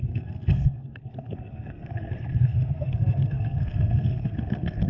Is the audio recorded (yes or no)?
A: no